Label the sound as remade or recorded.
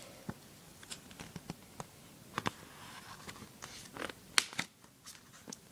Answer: recorded